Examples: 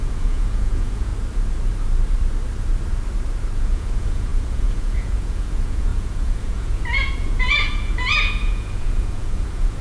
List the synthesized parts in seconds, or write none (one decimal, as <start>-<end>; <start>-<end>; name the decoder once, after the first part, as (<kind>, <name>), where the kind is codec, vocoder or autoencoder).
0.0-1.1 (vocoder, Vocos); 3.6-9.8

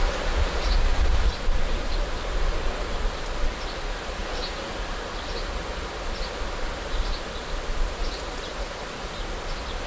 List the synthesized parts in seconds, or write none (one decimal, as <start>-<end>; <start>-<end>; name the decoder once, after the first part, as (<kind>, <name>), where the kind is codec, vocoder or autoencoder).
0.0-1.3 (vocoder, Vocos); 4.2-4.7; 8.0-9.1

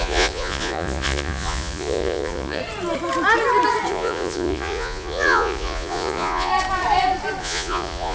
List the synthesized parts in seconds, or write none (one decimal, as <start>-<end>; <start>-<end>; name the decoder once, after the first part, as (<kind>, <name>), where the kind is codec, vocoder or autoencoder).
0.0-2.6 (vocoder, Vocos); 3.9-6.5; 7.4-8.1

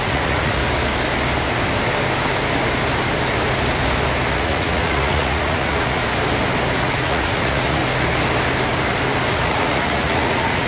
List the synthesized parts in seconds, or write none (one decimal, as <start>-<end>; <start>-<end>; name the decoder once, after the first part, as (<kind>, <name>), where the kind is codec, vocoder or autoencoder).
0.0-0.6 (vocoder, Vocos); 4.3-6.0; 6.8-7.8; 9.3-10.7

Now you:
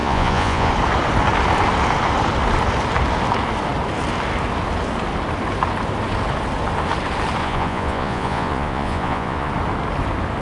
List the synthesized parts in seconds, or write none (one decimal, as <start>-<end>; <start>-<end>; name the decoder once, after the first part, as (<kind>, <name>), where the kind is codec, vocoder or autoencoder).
0.0-0.7 (vocoder, Vocos); 7.4-9.5

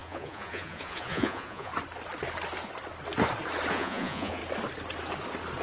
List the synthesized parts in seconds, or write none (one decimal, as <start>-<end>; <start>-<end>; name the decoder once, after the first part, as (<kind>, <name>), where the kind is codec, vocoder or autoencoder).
0.0-1.7 (vocoder, Vocos); 3.7-4.4

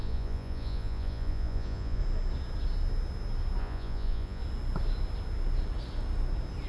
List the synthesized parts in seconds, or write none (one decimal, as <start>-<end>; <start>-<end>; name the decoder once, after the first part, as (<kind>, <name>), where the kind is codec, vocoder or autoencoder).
0.0-2.0 (vocoder, Vocos); 3.6-4.4

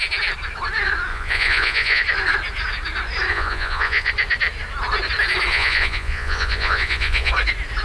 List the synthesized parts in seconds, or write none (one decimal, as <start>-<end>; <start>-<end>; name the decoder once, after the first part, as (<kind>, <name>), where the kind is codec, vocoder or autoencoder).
1.1-2.0 (vocoder, Vocos); 3.3-4.1; 5.5-7.3